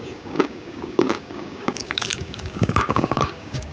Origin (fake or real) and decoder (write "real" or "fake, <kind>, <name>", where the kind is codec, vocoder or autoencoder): fake, codec, DAC